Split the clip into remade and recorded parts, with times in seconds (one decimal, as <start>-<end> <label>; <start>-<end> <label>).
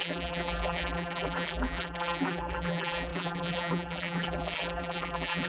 0.0-5.5 remade